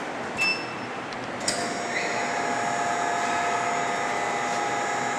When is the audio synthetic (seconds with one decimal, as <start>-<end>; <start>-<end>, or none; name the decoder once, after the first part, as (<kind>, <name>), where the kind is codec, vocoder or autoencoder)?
none

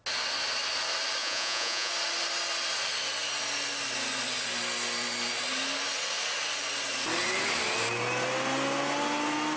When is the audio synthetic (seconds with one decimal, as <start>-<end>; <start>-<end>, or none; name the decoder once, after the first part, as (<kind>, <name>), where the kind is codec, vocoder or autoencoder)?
1.2-1.9 (vocoder, Vocos)

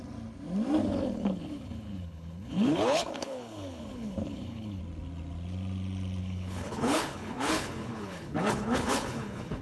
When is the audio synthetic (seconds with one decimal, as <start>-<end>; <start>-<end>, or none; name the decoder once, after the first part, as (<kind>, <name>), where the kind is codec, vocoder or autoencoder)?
0.8-4.8 (codec, HILCodec); 6.2-9.6

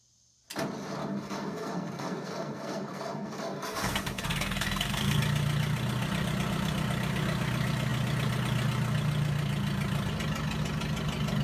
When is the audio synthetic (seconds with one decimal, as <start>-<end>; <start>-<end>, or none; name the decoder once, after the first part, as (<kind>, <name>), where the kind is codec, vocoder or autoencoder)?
1.0-5.2 (codec, SNAC)